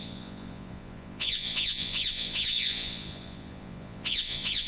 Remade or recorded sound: remade